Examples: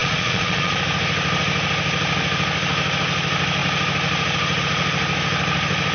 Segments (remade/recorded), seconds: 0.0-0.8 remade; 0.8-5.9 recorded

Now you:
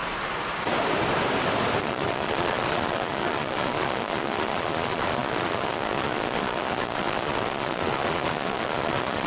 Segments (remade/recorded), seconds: 0.0-1.8 recorded; 1.8-9.3 remade

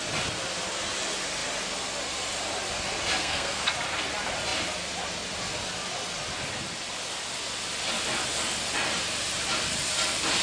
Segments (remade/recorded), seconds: 0.0-3.2 recorded; 3.2-3.7 remade; 3.7-10.4 recorded

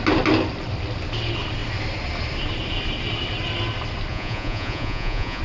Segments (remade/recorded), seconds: 0.0-4.1 recorded; 4.1-5.4 remade

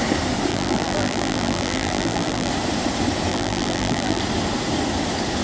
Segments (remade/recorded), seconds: 0.0-0.5 recorded; 0.5-2.5 remade; 2.5-3.3 recorded; 3.3-4.2 remade; 4.2-5.4 recorded